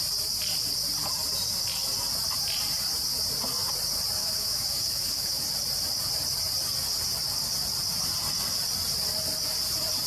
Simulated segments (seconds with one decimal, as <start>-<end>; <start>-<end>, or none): 4.2-5.4